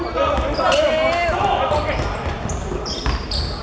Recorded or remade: recorded